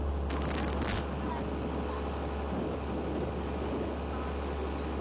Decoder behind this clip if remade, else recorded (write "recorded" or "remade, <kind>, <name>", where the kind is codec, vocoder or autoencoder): recorded